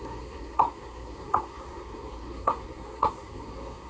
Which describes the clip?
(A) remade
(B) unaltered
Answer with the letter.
A